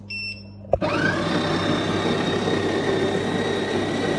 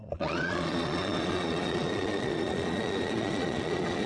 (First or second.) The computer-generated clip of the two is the second